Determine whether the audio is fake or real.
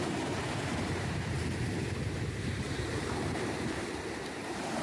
fake